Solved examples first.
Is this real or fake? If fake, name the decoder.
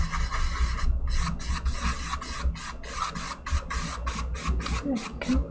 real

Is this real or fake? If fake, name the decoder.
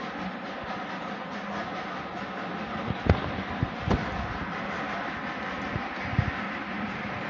real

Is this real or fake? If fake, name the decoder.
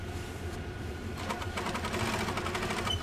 real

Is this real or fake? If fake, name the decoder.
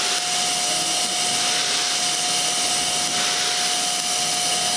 real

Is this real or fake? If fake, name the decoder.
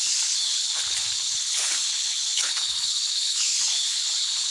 fake, codec, HILCodec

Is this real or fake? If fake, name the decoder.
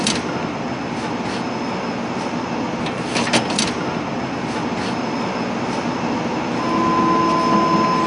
real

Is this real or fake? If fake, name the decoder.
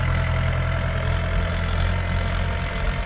real